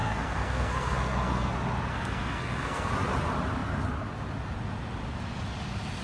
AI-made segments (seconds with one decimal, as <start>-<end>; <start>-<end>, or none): 0.0-1.5; 1.9-2.9